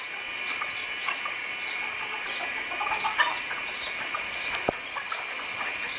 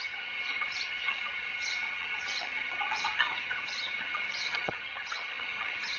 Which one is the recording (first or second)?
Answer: first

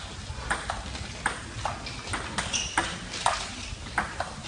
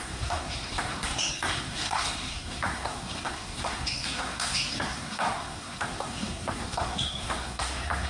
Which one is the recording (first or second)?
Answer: first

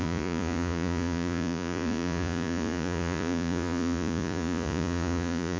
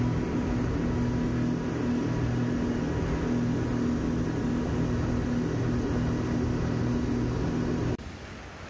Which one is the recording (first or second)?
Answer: second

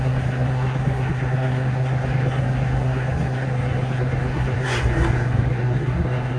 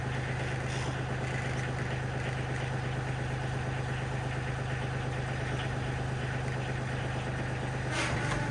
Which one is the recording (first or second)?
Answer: second